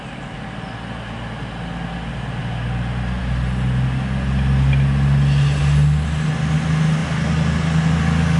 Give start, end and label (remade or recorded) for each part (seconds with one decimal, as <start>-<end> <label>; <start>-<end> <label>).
0.0-8.4 recorded